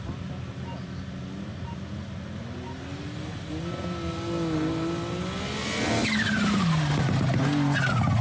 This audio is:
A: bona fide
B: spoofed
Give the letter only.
A